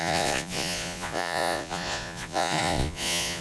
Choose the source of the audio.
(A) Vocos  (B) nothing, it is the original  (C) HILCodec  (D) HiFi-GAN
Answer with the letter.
A